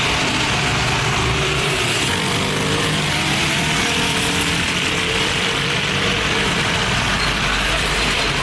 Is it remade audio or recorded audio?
remade